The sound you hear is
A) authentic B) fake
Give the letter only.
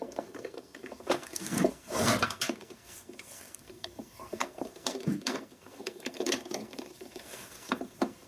B